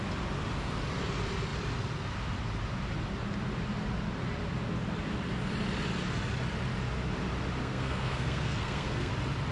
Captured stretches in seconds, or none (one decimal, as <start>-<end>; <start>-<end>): 0.0-7.6; 9.1-9.5